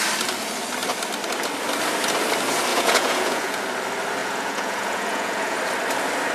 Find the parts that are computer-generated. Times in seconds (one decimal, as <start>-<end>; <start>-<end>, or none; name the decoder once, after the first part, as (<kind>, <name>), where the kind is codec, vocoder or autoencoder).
2.7-3.6 (vocoder, Vocos); 4.2-5.6